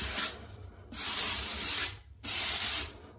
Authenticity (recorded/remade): remade